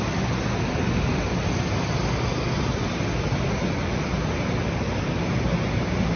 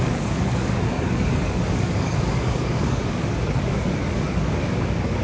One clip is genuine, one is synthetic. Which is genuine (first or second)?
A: first